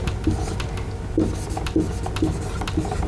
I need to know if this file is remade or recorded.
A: recorded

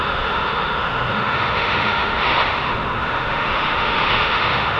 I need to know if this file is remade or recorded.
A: remade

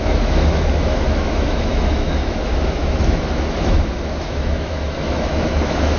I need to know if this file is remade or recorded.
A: remade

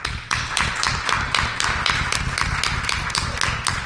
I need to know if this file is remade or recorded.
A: recorded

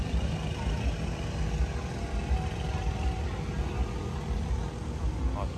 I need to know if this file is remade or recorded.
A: recorded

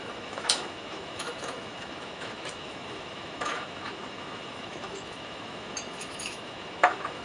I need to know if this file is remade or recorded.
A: remade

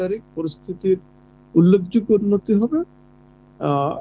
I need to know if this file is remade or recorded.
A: remade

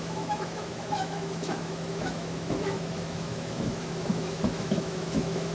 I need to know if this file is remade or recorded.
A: remade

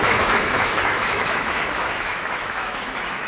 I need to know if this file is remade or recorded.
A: remade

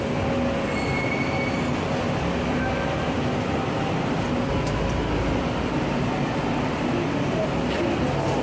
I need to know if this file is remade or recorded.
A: recorded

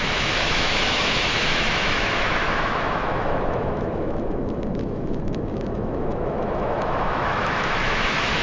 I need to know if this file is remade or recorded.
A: remade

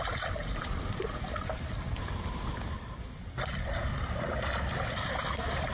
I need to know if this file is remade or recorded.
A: recorded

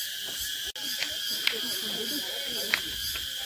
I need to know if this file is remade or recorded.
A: recorded